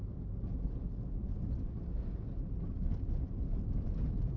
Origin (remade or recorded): recorded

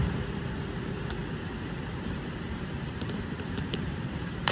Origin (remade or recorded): remade